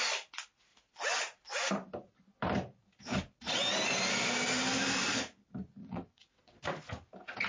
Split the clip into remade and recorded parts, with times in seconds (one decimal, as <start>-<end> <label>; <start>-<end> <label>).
0.0-5.8 recorded; 5.8-6.6 remade; 6.6-7.5 recorded